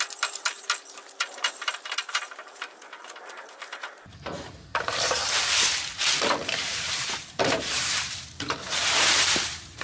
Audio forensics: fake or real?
fake